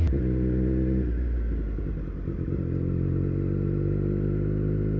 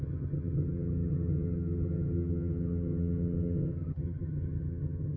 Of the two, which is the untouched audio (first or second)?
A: first